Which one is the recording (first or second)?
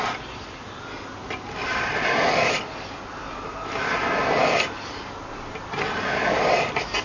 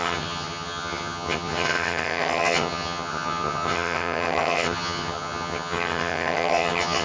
first